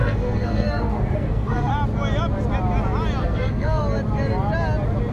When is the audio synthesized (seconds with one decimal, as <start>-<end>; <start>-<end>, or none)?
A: 0.0-1.7; 3.2-3.8